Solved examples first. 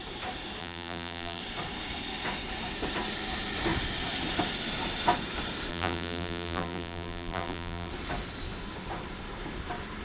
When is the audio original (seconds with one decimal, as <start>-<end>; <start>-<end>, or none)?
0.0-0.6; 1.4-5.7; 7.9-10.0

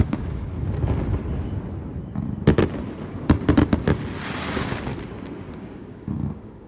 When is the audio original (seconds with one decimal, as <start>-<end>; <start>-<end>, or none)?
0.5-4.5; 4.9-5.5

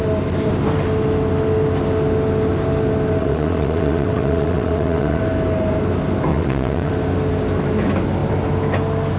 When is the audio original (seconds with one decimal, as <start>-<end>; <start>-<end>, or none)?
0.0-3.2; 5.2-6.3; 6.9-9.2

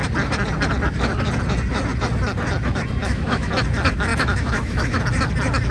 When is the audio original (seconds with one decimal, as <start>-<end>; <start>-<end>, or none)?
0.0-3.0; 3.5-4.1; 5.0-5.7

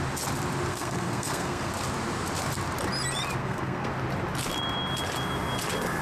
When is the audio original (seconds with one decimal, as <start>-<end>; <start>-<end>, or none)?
0.0-0.7; 1.7-3.4; 3.9-6.0

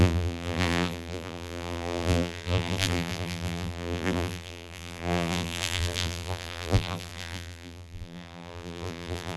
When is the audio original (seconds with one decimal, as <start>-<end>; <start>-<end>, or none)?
none

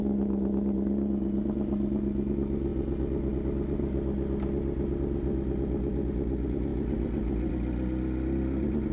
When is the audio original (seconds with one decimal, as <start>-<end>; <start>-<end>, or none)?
0.0-8.9

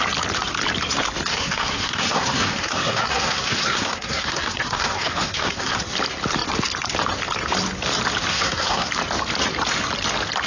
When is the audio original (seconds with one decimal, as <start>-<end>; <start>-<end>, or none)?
0.0-1.3; 5.8-8.3; 8.9-10.5